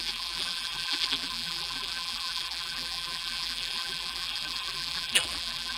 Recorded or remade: remade